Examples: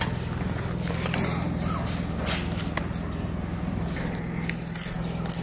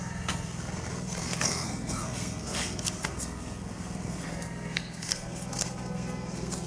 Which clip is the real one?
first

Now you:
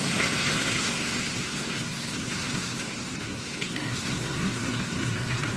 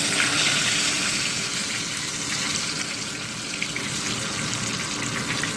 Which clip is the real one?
second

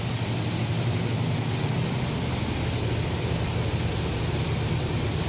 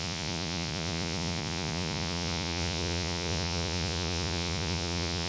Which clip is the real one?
first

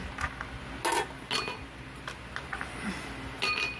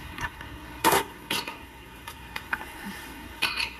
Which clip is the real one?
first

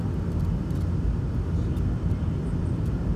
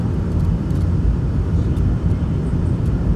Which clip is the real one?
first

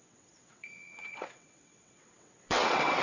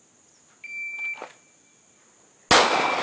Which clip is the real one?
second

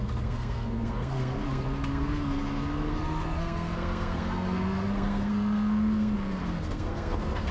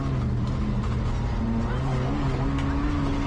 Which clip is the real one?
second